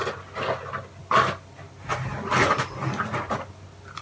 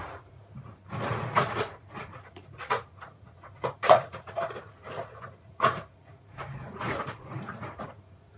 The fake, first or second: second